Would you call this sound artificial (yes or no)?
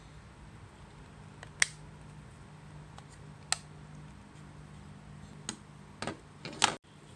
no